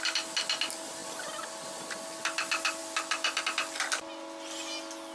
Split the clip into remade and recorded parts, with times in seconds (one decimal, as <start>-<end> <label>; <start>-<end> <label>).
0.0-5.1 recorded